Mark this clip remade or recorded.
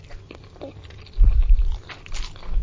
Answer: recorded